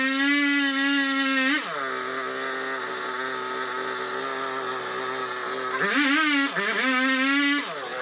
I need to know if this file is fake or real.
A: real